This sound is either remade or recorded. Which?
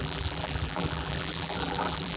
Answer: remade